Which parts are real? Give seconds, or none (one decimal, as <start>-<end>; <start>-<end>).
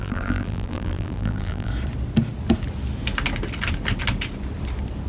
1.7-5.1